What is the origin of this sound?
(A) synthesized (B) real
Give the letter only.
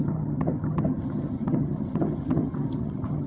A